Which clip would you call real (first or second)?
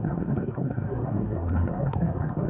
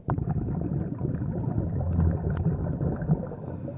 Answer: second